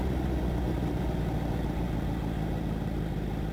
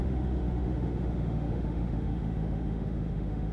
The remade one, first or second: second